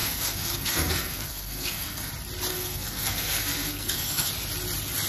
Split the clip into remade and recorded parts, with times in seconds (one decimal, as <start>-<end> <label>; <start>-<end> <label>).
0.0-2.1 remade; 2.1-2.5 recorded; 2.5-4.3 remade; 4.3-5.1 recorded